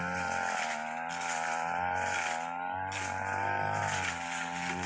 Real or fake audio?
real